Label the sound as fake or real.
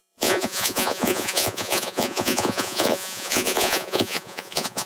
fake